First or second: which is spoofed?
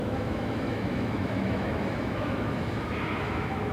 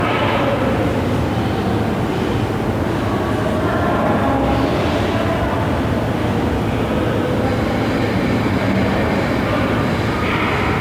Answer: first